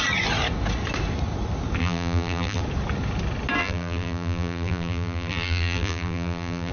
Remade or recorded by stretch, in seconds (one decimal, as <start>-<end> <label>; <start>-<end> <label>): 0.0-1.8 recorded; 1.8-2.6 remade; 2.6-3.6 recorded; 3.6-6.7 remade